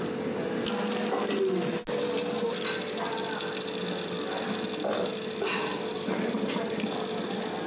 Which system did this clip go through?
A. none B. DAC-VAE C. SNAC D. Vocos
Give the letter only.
A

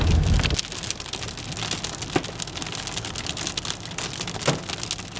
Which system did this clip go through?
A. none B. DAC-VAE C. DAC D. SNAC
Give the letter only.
A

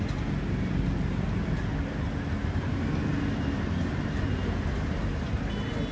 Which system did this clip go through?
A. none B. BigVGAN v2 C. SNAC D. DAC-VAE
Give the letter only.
A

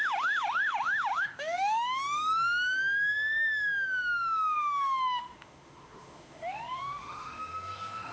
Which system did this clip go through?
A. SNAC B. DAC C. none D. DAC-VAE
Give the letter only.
D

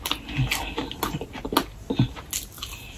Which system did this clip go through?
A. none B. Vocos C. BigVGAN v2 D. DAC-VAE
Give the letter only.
A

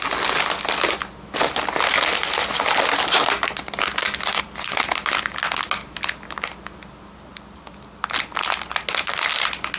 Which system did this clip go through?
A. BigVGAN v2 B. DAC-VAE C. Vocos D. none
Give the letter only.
D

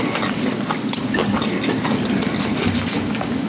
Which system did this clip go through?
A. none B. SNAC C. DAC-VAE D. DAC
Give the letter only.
A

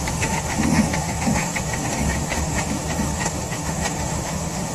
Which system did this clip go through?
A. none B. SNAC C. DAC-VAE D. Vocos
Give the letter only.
C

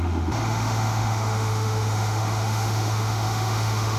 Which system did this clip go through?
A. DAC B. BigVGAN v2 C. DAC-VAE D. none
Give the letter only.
C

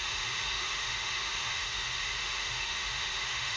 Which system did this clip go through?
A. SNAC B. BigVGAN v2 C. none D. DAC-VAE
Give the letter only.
D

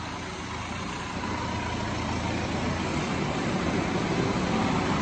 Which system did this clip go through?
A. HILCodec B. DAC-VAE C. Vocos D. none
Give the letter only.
D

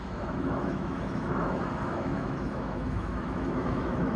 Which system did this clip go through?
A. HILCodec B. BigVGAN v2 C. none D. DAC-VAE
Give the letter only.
D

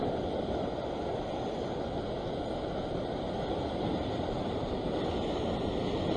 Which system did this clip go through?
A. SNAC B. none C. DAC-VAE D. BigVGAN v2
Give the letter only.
B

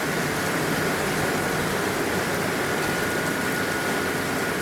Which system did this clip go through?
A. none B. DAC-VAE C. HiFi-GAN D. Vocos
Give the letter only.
A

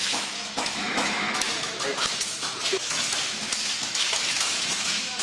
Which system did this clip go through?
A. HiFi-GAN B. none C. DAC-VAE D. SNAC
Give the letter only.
C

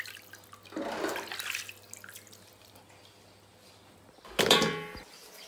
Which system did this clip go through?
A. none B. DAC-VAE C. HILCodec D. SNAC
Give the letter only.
A